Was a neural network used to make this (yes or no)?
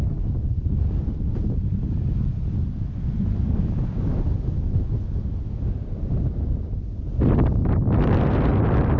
no